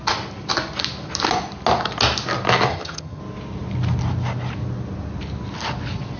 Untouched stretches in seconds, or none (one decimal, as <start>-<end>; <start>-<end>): 0.0-2.7; 3.2-6.2

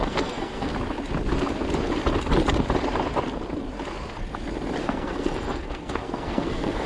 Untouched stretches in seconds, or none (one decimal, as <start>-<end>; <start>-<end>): 0.7-4.8